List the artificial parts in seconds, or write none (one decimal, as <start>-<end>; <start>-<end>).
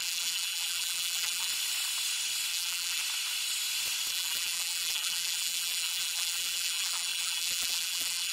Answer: 0.0-1.5; 2.5-3.0; 4.1-8.3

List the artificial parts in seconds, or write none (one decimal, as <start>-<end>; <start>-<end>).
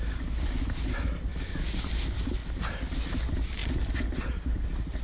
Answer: 1.3-1.9; 2.4-3.0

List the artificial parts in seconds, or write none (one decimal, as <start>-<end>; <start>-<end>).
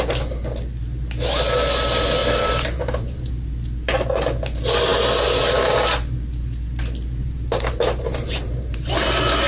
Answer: 2.2-3.3; 7.2-8.9